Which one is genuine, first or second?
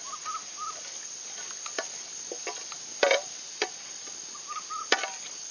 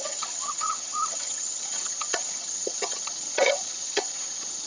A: first